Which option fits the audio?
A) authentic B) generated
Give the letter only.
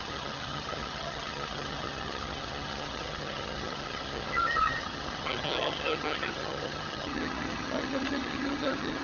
B